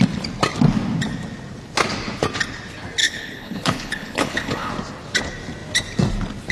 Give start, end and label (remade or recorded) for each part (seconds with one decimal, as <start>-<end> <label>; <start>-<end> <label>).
0.0-3.0 recorded; 3.0-4.7 remade; 4.7-6.5 recorded